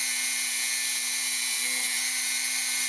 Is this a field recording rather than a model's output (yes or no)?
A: yes